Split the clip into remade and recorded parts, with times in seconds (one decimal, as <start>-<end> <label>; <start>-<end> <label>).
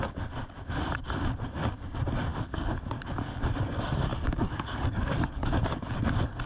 0.0-4.1 recorded; 4.1-5.5 remade; 5.5-6.5 recorded